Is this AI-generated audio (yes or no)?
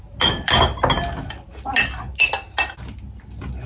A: no